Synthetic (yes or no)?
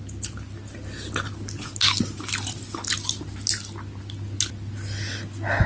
no